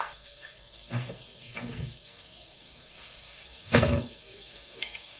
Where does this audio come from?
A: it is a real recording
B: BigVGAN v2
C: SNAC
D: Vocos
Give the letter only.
C